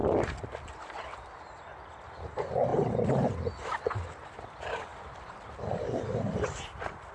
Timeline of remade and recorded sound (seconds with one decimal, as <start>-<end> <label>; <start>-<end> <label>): 0.0-7.1 remade